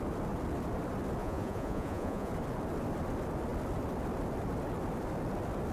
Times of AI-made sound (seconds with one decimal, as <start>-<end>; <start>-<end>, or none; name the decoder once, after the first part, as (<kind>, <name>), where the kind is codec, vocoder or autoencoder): 1.2-2.3 (vocoder, Vocos)